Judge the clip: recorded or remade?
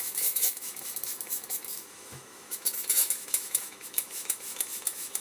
remade